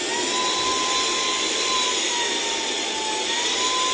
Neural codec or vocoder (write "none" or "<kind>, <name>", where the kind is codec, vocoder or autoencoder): none